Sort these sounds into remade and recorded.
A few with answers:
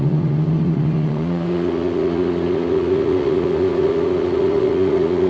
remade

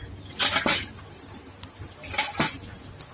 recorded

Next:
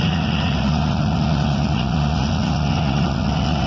remade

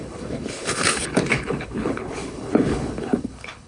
remade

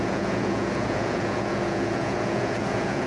remade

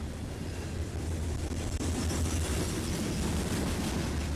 recorded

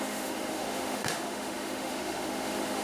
remade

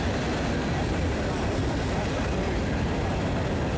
recorded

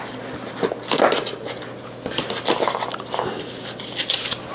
recorded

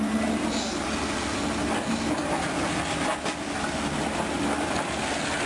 recorded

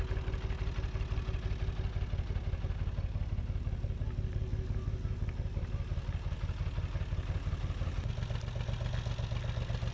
recorded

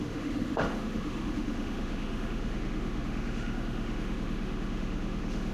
remade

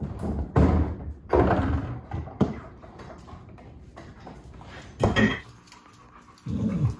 recorded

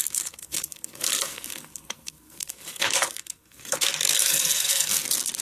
remade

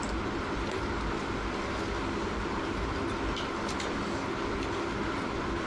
recorded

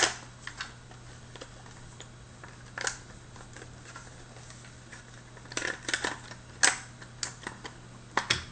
recorded